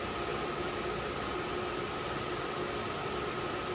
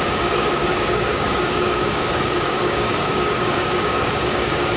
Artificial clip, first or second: second